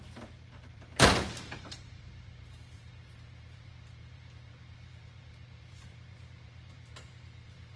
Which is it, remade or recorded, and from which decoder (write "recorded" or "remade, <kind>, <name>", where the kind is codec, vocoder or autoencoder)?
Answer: remade, vocoder, BigVGAN v2